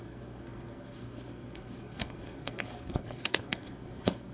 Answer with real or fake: fake